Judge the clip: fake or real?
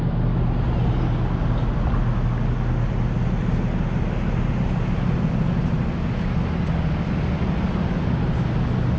real